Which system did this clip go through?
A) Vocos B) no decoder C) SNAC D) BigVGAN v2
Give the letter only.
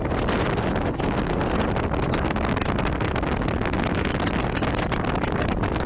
B